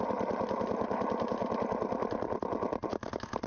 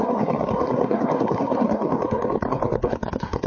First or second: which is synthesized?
second